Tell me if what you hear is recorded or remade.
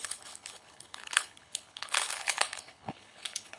remade